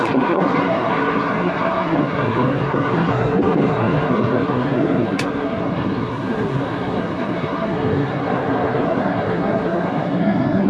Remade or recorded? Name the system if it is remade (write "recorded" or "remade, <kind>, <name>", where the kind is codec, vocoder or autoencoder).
remade, codec, SNAC